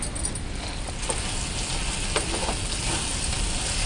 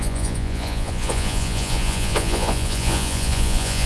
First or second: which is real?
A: first